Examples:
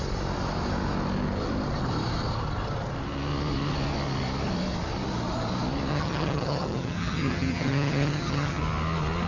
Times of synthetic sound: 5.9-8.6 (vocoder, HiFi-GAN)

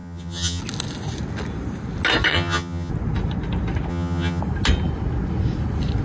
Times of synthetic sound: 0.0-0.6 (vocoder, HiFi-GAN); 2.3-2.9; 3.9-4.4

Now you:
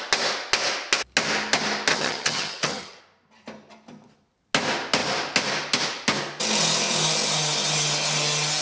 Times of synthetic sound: 1.9-3.0 (vocoder, HiFi-GAN)

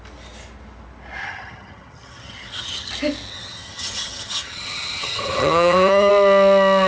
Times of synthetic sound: 1.2-2.9 (vocoder, HiFi-GAN); 3.3-6.1